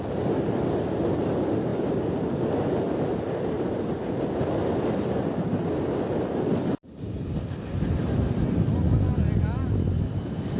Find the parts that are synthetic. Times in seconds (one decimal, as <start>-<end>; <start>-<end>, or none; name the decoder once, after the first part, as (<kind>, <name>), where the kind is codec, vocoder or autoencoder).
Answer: none